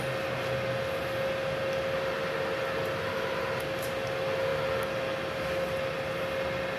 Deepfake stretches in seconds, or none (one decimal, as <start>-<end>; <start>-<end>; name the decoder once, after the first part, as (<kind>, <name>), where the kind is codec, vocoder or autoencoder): 4.5-6.1 (vocoder, BigVGAN v2)